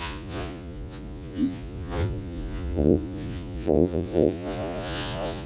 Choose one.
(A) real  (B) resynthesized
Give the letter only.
B